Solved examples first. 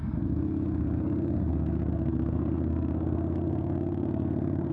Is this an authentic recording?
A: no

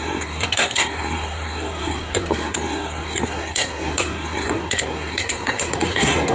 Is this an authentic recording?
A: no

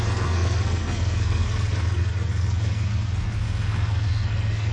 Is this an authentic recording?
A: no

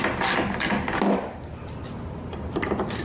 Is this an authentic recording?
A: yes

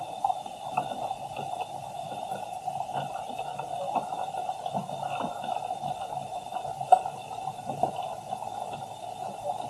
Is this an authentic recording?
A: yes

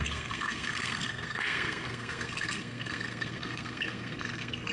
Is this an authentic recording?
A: no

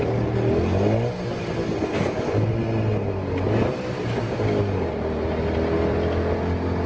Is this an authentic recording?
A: yes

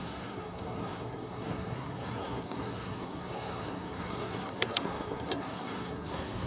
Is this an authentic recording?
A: no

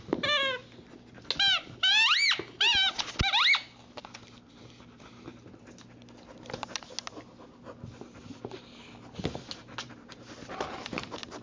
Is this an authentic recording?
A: yes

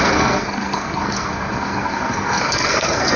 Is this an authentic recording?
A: no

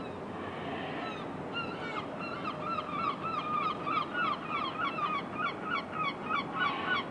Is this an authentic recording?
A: yes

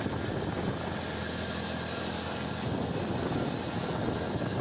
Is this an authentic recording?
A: yes